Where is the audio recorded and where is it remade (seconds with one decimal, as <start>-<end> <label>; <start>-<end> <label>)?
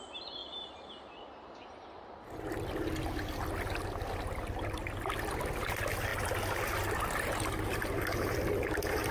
0.0-9.1 recorded